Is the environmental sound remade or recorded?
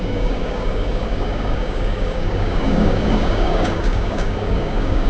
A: remade